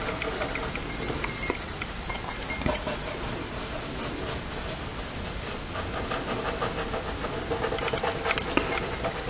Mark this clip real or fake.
real